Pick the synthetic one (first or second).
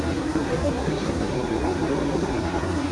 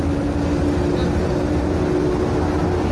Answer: first